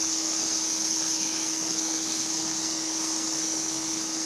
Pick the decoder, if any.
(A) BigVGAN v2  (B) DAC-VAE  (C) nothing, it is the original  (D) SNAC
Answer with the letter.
D